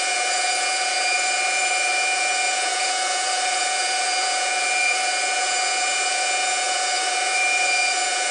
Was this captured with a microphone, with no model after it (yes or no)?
no